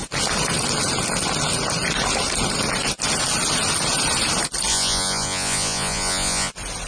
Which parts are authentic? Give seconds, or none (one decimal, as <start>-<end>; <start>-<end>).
0.0-4.7; 6.5-6.9